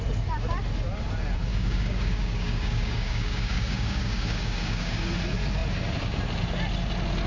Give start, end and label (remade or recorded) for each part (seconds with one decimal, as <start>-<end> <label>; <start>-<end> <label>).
0.0-1.5 recorded; 1.5-5.0 remade; 5.0-7.3 recorded